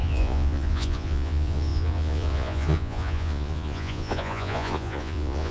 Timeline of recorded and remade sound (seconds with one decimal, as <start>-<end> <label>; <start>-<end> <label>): 0.0-5.5 remade